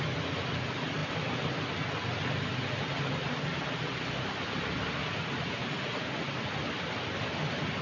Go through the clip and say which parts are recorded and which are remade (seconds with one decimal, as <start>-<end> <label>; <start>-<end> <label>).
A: 0.0-7.8 recorded

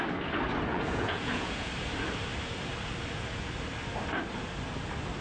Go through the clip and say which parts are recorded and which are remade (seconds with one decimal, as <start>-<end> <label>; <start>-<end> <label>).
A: 0.0-0.7 recorded; 0.7-1.7 remade; 1.7-5.2 recorded

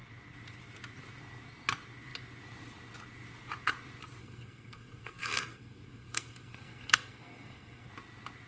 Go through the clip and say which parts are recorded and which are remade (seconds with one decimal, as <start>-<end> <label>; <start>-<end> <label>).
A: 0.0-4.2 recorded; 4.2-7.9 remade; 7.9-8.5 recorded

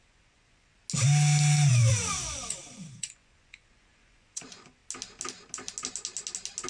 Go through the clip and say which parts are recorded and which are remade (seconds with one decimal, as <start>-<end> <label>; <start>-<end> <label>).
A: 0.0-0.7 remade; 0.7-1.7 recorded; 1.7-4.8 remade; 4.8-6.7 recorded

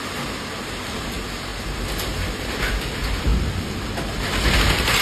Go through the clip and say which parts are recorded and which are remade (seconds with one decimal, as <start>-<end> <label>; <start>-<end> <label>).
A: 0.0-5.0 recorded

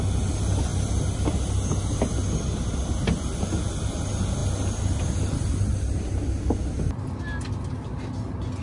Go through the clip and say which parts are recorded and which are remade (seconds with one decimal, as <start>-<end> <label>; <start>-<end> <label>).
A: 0.0-8.6 recorded